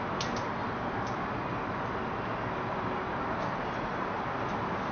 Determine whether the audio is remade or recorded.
recorded